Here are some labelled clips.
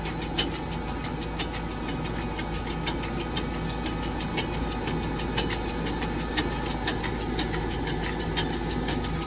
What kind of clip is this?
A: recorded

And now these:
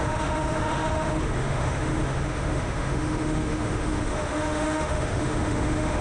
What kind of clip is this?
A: remade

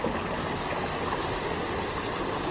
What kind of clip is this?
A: recorded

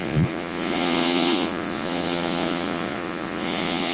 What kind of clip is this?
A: remade